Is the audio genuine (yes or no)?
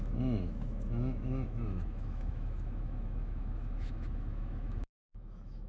no